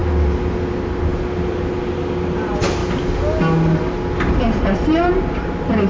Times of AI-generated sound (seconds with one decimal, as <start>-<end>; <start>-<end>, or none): none